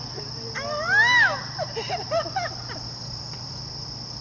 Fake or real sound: real